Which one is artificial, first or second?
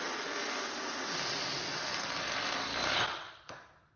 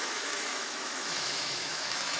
second